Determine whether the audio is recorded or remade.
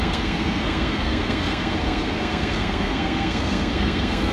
remade